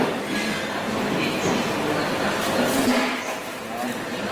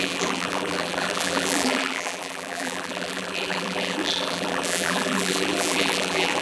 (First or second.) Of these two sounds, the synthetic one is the second